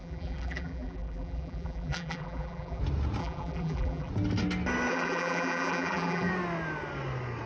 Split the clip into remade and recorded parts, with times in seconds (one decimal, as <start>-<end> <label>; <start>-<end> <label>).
0.0-2.8 remade; 2.8-3.2 recorded; 3.2-4.1 remade; 4.1-4.9 recorded; 4.9-6.3 remade; 6.3-7.5 recorded